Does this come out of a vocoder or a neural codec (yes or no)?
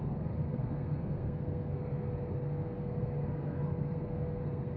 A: yes